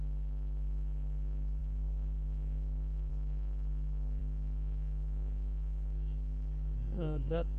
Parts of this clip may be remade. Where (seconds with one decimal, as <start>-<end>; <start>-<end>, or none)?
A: 0.0-7.6